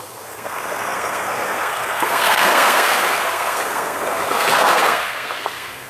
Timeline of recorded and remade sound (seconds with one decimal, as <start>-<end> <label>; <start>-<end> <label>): 0.0-5.9 remade